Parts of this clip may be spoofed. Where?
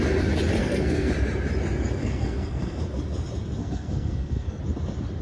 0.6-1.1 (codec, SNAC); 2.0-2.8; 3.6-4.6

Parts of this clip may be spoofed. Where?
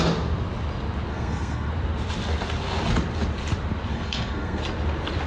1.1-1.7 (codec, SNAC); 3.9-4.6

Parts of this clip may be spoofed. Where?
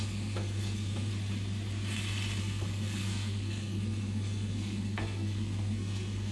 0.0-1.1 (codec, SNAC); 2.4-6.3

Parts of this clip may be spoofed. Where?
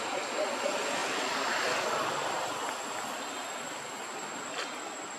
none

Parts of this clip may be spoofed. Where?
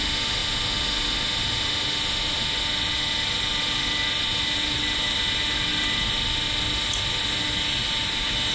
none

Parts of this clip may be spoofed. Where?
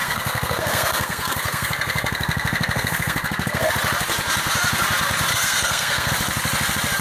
0.0-3.7 (codec, SNAC); 5.3-6.1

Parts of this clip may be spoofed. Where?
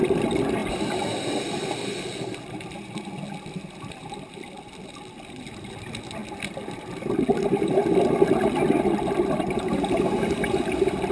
none